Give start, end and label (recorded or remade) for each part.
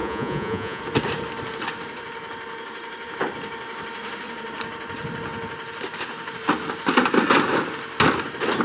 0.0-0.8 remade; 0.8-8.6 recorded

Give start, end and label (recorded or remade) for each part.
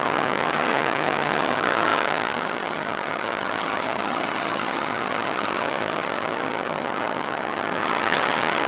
0.0-8.7 remade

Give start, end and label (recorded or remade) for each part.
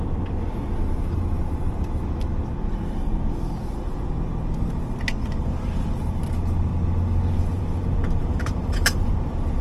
0.0-5.2 recorded; 5.2-5.7 remade; 5.7-8.2 recorded; 8.2-9.1 remade; 9.1-9.6 recorded